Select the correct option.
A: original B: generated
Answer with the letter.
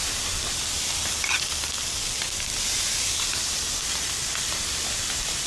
A